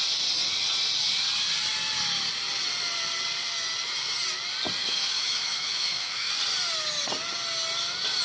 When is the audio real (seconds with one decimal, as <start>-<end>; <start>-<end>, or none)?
0.0-4.8; 6.3-8.2